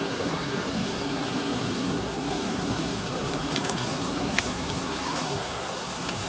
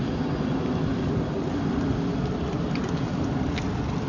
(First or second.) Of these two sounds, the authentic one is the second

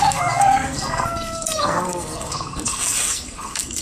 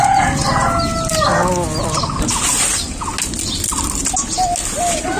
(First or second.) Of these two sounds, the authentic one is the second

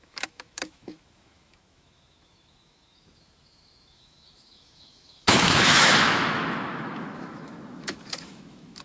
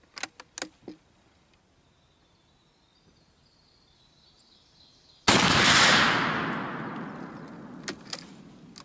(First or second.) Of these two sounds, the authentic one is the second